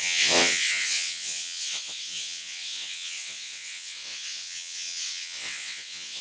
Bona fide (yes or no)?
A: no